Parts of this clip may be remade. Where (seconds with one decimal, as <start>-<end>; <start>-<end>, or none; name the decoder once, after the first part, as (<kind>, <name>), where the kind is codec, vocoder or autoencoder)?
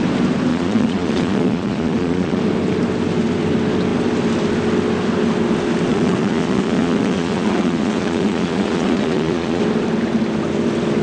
0.5-2.4 (vocoder, Vocos); 5.9-9.6